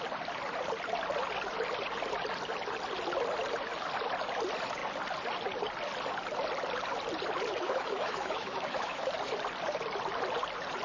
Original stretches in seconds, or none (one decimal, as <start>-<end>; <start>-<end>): 0.0-7.5; 9.1-10.8